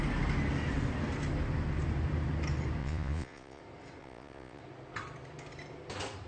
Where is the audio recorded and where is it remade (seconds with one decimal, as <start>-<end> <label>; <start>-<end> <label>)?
0.0-2.8 recorded; 2.8-3.6 remade; 3.6-4.0 recorded; 4.0-4.6 remade; 4.6-6.3 recorded